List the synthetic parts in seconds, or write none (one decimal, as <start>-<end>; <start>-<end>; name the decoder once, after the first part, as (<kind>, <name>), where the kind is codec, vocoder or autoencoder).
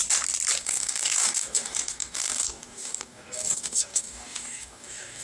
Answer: 0.6-5.2 (codec, DAC)